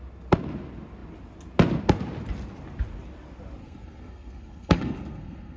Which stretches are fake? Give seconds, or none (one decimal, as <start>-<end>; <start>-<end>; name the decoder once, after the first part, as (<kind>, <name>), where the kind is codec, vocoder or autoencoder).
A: 3.6-5.6 (codec, SNAC)